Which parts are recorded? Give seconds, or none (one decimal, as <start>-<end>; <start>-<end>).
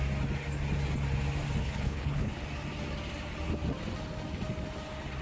0.0-1.6; 2.4-5.2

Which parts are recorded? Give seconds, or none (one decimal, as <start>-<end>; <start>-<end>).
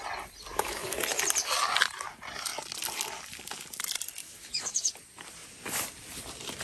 0.0-0.5; 1.0-4.2; 4.9-6.6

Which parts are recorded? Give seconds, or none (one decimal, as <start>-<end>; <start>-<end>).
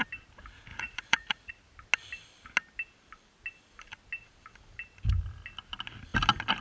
0.0-0.7; 1.5-6.6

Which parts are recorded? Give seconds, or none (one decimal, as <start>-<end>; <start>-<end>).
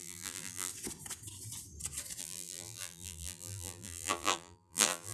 0.7-2.2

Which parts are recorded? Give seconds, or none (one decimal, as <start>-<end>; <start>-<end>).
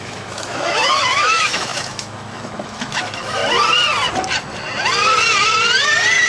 3.4-6.3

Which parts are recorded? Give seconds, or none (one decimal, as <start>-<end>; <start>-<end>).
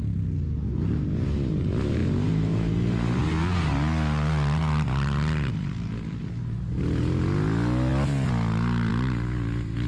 0.0-9.9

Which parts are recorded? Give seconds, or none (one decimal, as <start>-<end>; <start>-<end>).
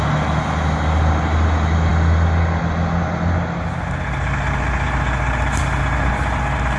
0.0-6.8